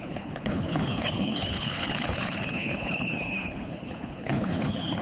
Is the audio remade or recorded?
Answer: remade